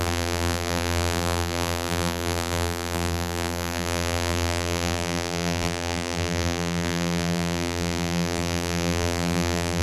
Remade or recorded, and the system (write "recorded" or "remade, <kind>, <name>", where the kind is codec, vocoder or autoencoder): remade, vocoder, BigVGAN v2